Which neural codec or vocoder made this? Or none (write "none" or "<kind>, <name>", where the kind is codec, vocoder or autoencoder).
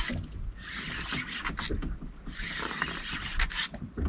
none